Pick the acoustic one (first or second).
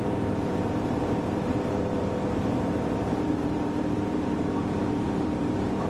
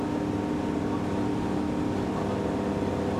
second